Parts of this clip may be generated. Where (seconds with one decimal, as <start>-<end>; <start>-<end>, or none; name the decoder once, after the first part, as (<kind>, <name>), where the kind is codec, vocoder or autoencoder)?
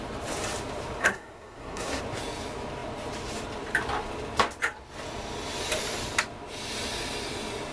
1.0-2.0 (codec, SNAC)